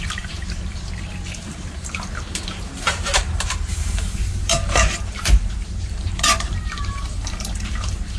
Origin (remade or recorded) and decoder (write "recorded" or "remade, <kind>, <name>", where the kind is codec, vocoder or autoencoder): remade, vocoder, BigVGAN v2